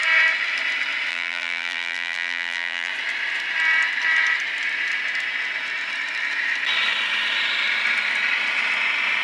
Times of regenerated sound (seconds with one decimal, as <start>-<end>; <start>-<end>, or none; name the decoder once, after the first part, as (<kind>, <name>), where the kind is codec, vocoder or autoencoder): 1.1-2.9 (vocoder, BigVGAN v2)